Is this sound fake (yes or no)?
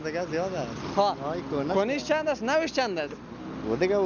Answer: no